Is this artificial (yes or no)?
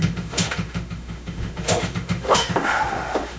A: yes